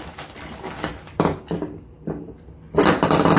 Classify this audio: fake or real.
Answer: real